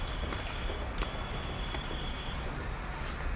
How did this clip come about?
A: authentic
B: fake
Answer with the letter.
A